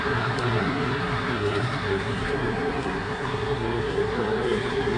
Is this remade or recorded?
remade